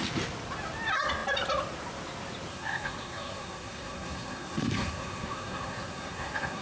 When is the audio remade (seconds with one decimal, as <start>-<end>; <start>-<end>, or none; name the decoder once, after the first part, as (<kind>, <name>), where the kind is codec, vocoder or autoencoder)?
2.5-6.6 (codec, SNAC)